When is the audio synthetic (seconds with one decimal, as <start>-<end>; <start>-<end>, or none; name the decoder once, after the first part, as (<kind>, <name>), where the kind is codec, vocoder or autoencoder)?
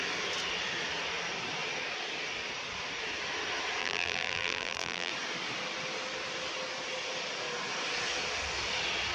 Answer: 3.8-5.1 (vocoder, BigVGAN v2)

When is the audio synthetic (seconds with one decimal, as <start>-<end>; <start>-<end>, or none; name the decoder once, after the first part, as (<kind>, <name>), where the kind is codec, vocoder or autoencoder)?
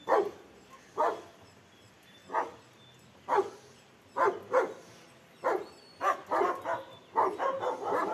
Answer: none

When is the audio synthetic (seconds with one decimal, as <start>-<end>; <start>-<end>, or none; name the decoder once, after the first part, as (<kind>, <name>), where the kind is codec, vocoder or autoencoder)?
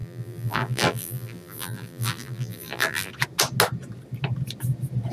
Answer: 0.0-3.1 (vocoder, BigVGAN v2)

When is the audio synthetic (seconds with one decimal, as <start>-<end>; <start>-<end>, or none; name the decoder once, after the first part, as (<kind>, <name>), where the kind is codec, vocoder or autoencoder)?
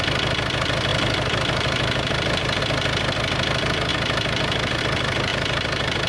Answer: 0.9-2.6 (vocoder, BigVGAN v2); 3.9-4.8; 5.3-6.1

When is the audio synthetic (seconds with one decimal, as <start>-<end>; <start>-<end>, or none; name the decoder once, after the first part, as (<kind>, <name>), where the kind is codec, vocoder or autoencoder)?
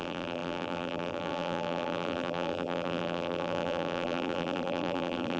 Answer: 0.0-5.4 (vocoder, BigVGAN v2)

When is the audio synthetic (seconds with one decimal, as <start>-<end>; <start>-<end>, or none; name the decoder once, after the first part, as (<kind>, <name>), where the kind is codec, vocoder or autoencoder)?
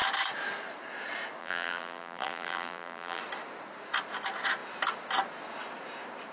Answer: 1.4-3.2 (vocoder, BigVGAN v2)